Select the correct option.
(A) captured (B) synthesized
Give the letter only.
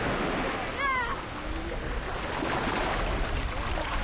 A